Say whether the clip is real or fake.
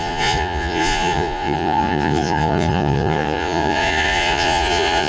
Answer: fake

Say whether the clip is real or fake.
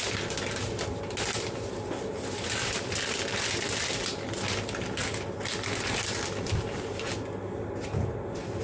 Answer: real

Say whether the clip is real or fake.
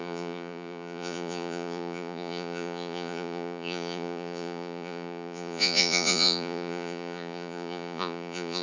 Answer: fake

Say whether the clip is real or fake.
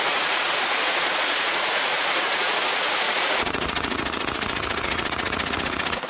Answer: fake